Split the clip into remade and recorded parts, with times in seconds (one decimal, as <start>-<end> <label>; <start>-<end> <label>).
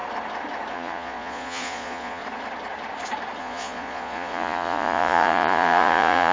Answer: 0.0-0.7 recorded; 0.7-2.2 remade; 2.2-3.4 recorded; 3.4-6.3 remade